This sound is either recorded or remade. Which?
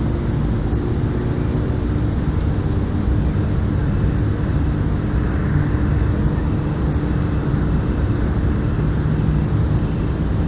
recorded